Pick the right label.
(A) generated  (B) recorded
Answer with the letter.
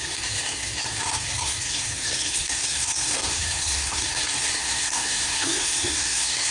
A